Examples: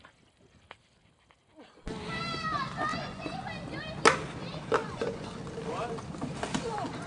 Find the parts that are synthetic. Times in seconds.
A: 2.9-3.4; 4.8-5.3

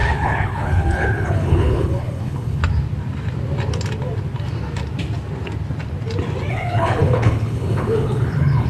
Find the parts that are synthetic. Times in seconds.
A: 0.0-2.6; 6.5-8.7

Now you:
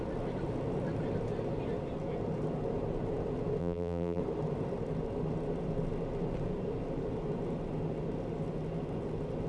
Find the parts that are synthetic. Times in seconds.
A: 3.6-4.2

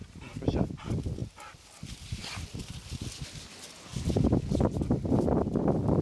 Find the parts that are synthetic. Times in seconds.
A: none

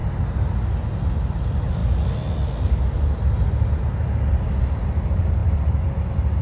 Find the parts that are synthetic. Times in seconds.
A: none

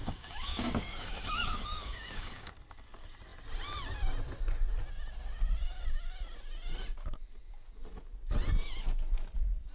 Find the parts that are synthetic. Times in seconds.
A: 0.0-2.5